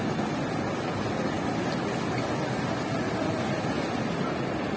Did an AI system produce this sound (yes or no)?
no